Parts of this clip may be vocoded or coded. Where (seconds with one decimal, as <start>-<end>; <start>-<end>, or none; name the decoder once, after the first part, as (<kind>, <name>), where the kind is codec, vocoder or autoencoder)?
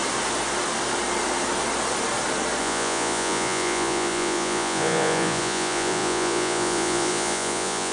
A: 2.6-7.9 (vocoder, Vocos)